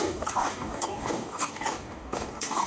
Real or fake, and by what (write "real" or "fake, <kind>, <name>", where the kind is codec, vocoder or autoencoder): fake, codec, DAC